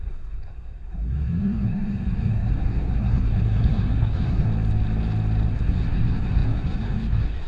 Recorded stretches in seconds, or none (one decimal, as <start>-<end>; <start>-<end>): 4.5-5.5